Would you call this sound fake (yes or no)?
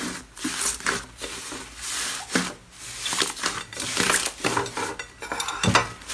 no